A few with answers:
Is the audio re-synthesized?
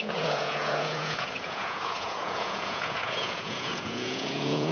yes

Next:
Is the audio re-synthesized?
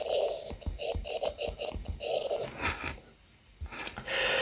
no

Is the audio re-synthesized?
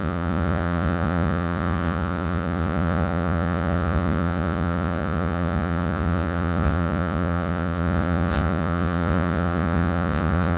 yes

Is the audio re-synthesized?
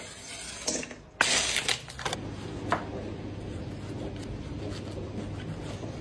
no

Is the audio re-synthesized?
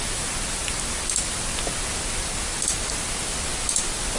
no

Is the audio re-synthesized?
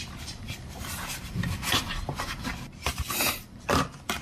yes